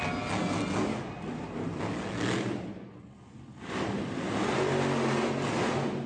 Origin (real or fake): real